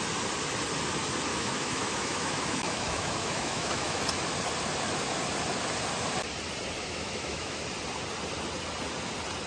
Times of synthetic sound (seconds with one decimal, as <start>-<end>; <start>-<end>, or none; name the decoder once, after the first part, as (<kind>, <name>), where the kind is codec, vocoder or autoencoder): 1.3-4.0 (autoencoder, DAC-VAE); 6.8-7.6